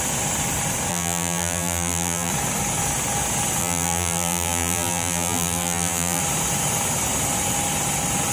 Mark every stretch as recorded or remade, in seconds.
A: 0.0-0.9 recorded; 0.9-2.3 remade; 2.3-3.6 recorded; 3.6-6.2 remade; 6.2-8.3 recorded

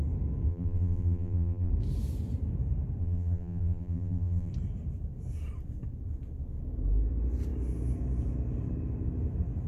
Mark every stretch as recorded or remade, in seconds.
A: 0.0-0.5 recorded; 0.5-1.7 remade; 1.7-3.0 recorded; 3.0-4.5 remade; 4.5-9.7 recorded

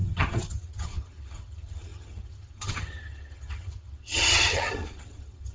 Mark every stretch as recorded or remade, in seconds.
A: 0.0-5.5 remade

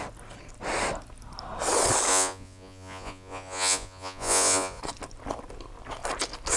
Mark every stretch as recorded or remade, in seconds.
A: 0.0-2.1 recorded; 2.1-4.8 remade; 4.8-6.6 recorded

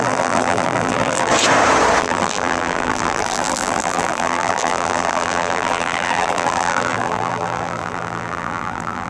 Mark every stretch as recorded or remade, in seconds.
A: 0.0-1.3 remade; 1.3-2.0 recorded; 2.0-9.1 remade

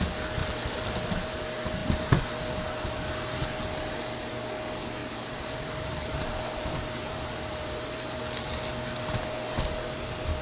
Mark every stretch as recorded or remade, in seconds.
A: 0.0-0.4 recorded; 0.4-1.4 remade; 1.4-5.0 recorded; 5.0-8.2 remade; 8.2-10.4 recorded

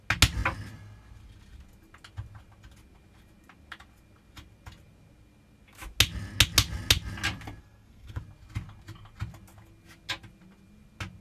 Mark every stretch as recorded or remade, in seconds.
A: 0.0-7.6 recorded; 7.6-8.2 remade; 8.2-11.2 recorded